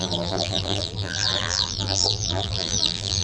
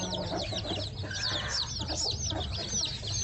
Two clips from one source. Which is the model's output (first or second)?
first